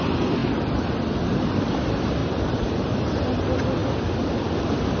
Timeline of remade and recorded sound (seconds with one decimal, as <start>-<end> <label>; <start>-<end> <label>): 0.0-2.2 recorded; 2.2-3.2 remade; 3.2-5.0 recorded